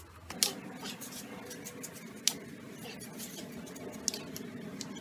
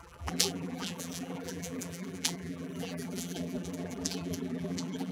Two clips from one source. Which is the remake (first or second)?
second